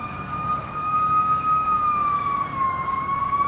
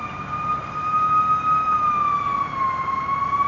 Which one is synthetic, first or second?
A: first